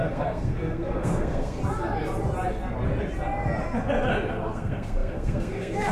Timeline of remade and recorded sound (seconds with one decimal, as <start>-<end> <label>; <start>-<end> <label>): 0.0-1.6 remade; 1.6-4.3 recorded; 4.3-5.9 remade